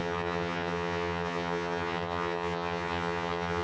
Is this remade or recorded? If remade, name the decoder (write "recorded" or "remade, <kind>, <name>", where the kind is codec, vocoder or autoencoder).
remade, vocoder, HiFi-GAN